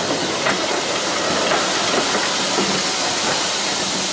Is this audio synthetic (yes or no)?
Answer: no